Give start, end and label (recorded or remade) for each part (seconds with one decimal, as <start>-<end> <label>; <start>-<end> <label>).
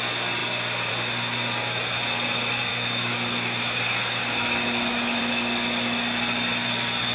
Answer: 0.0-2.7 recorded; 2.7-5.2 remade; 5.2-7.1 recorded